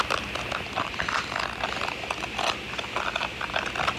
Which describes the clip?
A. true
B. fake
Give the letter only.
A